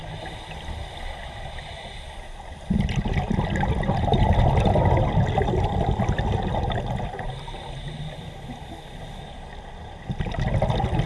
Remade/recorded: recorded